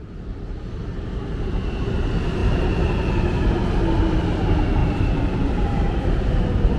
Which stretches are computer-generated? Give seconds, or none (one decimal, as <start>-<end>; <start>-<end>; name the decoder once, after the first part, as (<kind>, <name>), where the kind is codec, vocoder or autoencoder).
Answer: none

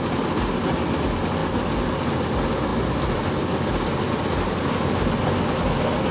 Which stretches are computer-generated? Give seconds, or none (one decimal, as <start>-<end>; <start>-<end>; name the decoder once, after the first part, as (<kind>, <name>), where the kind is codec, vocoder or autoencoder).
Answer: none

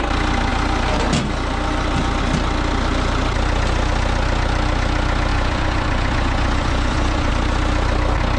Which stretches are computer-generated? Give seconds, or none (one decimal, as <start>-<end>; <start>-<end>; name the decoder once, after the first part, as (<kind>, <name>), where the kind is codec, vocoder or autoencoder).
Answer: 5.3-7.3 (vocoder, Vocos)

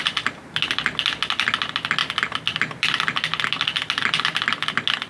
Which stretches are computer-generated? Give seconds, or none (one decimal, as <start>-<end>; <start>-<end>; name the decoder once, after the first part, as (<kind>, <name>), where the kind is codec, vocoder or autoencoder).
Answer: none

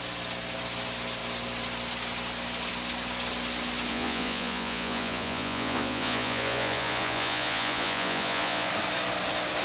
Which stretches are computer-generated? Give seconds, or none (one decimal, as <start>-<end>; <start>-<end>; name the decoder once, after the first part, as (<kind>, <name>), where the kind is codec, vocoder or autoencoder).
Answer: 3.9-8.7 (vocoder, Vocos)